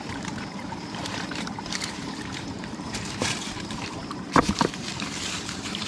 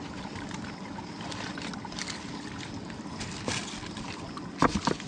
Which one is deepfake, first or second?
first